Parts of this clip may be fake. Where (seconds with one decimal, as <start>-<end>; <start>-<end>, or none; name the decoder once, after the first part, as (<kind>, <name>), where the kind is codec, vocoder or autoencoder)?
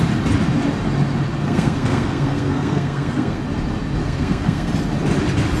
1.4-3.4 (codec, SNAC); 4.0-4.7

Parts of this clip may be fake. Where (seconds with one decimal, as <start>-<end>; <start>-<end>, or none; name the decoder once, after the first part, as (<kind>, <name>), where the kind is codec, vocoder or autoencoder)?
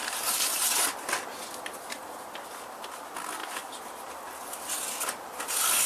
0.0-0.7 (vocoder, BigVGAN v2)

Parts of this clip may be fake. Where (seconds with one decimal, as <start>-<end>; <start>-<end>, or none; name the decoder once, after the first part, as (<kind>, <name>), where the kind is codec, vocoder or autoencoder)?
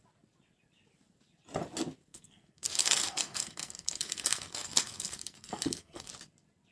2.1-6.1 (codec, SNAC)